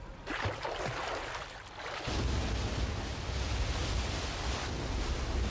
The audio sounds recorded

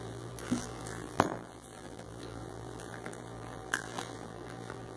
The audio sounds remade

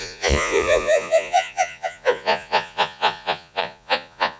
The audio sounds remade